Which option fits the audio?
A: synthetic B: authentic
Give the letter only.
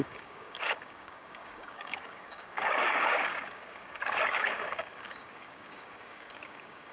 A